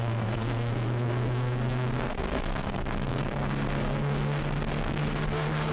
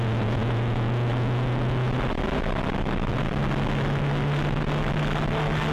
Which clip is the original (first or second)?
second